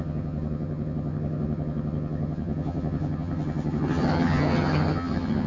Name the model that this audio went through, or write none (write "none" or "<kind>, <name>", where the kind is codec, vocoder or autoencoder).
vocoder, HiFi-GAN